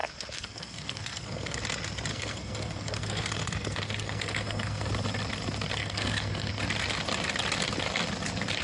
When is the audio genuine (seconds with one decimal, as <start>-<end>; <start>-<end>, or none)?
1.6-2.1; 4.9-5.8; 6.5-8.6